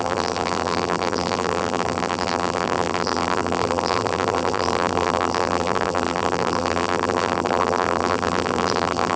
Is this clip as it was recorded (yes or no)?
no